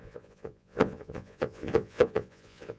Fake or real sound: fake